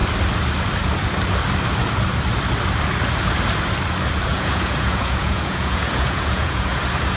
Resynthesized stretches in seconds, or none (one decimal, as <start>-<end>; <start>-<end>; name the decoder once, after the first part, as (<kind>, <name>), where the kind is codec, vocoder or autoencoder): 4.3-6.8 (vocoder, Vocos)